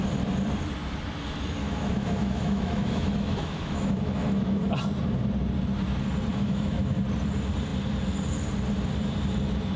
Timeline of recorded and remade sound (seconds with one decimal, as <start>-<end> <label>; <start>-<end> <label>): 0.0-1.6 recorded; 1.6-4.7 remade; 4.7-6.3 recorded; 6.3-7.0 remade; 7.0-9.8 recorded